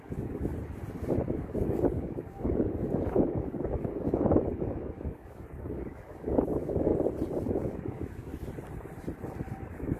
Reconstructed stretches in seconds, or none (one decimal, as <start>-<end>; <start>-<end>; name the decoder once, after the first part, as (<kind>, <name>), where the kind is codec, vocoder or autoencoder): 0.0-0.5 (codec, DAC); 1.2-6.9; 7.5-8.3; 9.6-10.0